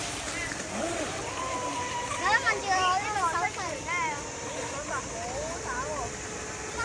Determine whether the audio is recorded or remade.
recorded